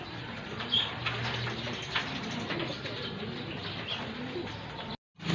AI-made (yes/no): no